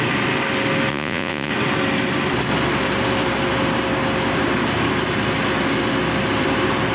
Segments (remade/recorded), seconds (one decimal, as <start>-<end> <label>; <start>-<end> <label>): 0.0-0.9 recorded; 0.9-1.5 remade; 1.5-6.9 recorded